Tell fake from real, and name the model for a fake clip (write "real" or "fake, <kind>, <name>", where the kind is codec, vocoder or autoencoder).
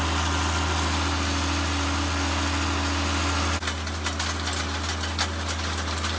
real